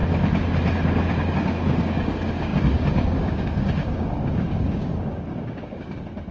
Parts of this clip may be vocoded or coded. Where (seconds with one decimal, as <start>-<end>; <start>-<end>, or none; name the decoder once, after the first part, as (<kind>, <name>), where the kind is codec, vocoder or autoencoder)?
1.3-6.3 (codec, DAC)